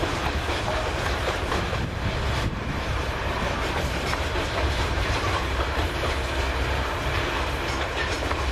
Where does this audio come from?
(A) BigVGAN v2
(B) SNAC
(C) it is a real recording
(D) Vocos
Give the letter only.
A